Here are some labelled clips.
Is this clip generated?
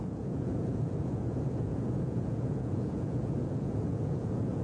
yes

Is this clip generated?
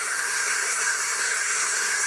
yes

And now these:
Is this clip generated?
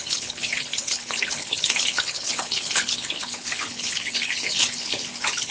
yes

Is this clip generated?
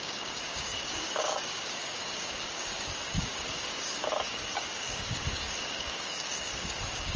yes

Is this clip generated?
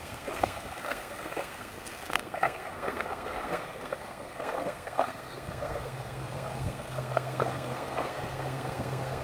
yes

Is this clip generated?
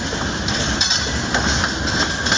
no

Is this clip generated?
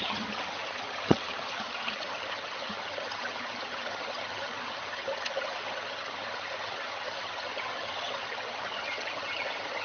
yes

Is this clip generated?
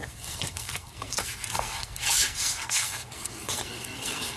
yes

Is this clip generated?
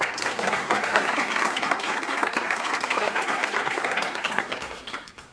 yes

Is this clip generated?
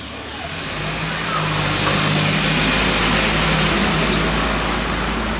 no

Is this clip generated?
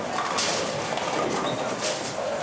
no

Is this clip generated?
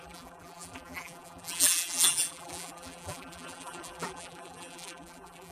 yes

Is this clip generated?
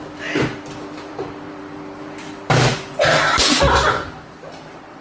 yes